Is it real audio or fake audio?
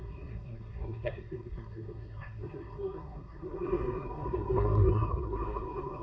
fake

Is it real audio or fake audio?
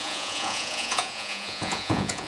fake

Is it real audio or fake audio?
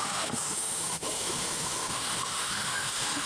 fake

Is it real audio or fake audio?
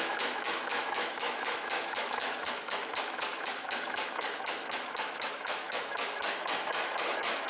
fake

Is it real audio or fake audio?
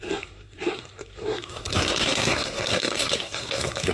fake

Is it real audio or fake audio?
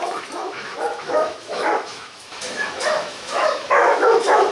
fake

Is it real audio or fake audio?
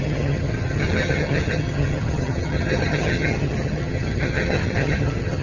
fake